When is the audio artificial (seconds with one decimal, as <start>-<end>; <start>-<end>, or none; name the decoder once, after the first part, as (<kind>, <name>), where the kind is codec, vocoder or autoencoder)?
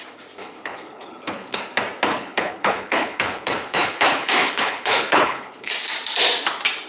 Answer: 0.4-1.6 (codec, HILCodec); 2.1-5.7